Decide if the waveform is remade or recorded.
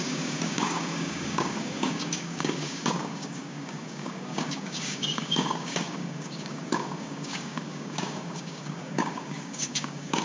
remade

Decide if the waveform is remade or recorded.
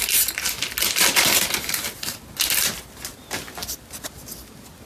recorded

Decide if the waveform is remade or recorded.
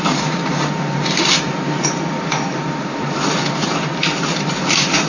remade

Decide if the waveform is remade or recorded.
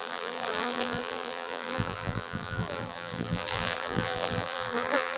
remade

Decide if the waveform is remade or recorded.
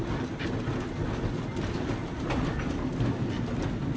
recorded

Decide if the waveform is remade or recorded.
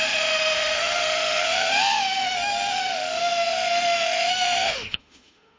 remade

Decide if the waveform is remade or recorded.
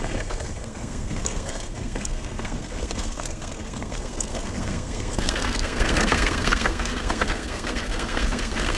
remade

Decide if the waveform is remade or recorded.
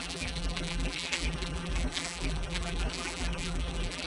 remade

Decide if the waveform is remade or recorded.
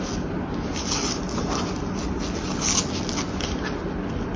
recorded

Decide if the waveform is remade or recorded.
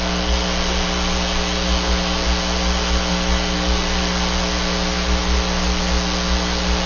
recorded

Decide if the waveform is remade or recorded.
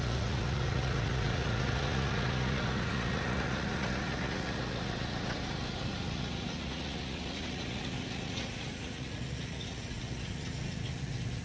remade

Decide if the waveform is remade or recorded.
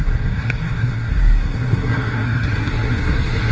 remade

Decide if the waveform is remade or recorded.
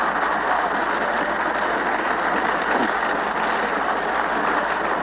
recorded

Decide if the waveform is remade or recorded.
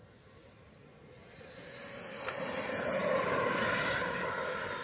recorded